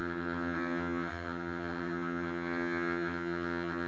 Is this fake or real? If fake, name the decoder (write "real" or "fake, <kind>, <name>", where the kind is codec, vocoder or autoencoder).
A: fake, vocoder, HiFi-GAN